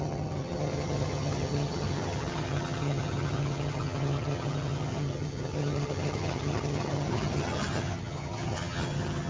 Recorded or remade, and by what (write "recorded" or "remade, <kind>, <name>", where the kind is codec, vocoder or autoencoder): remade, vocoder, HiFi-GAN